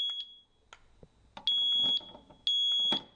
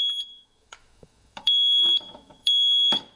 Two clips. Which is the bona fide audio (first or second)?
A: first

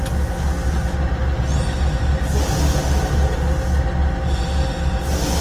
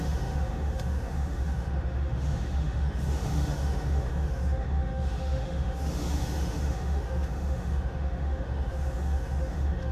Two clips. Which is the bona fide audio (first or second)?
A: first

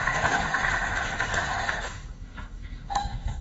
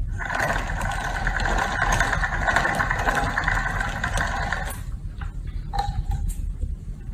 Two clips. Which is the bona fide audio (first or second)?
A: second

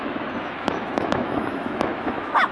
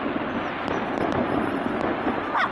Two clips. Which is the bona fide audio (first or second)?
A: second